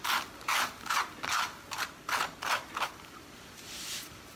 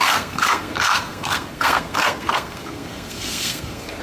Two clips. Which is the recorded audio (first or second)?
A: first